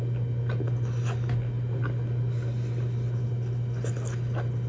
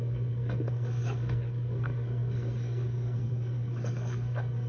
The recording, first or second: first